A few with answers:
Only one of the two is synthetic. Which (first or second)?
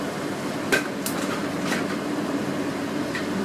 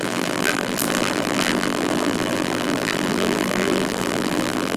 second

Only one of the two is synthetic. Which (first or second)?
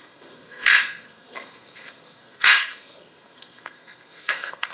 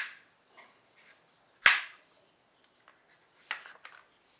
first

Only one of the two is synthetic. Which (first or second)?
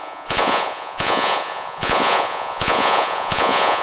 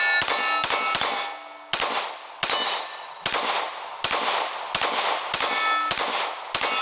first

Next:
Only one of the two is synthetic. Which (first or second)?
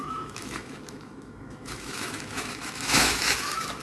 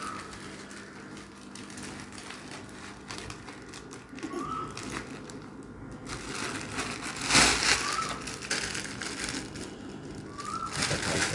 first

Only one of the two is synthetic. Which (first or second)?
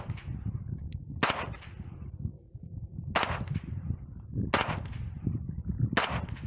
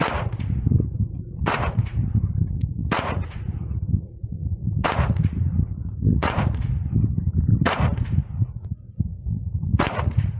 second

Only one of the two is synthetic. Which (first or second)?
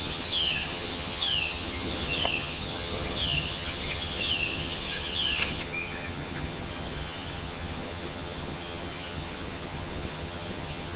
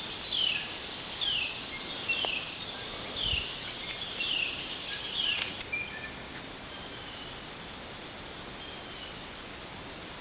first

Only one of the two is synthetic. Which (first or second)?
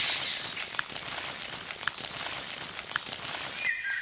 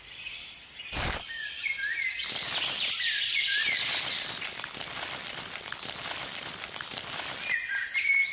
second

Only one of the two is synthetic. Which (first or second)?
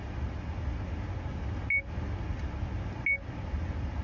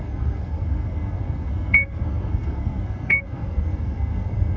second